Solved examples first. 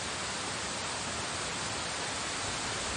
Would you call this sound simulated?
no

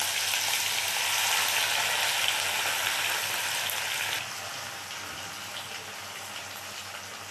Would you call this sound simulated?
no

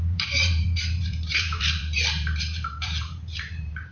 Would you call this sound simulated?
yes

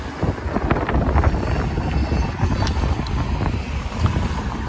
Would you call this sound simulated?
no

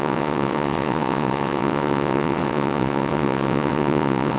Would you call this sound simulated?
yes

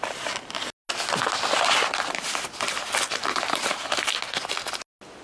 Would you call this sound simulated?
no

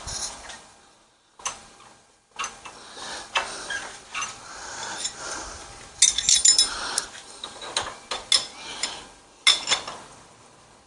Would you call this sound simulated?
no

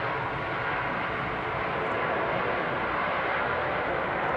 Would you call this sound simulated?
no